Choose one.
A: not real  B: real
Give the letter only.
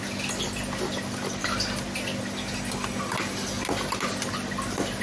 B